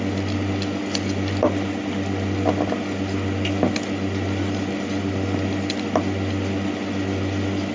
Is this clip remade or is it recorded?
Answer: recorded